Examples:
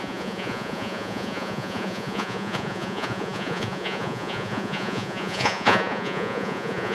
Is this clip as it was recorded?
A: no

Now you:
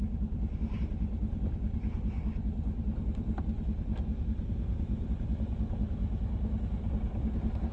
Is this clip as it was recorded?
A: yes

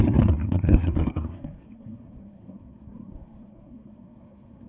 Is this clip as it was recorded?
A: no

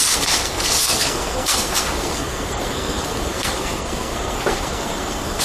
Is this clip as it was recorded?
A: no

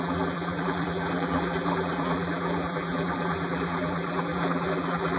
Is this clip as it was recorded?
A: no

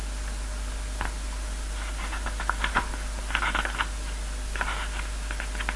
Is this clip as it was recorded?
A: yes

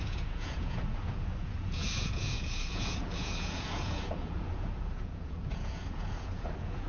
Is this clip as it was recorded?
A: no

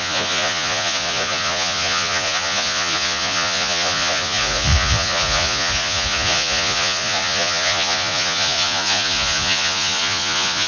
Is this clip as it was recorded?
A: no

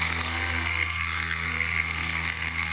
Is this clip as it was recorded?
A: no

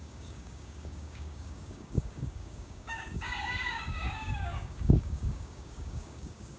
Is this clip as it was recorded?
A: no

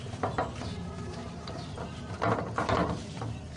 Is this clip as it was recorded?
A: yes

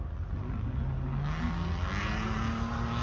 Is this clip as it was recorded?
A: yes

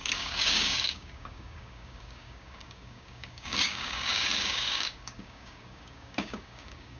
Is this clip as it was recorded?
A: no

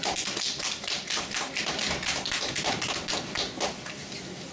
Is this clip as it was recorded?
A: yes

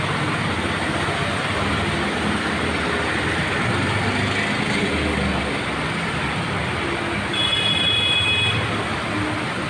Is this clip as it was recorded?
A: yes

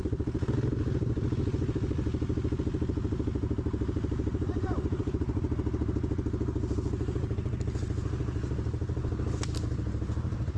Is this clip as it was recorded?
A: yes